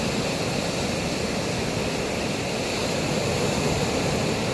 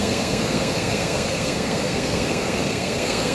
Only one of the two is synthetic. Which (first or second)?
second